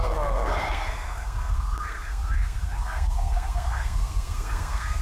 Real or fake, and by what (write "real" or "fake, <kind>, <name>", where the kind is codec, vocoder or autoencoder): fake, codec, SNAC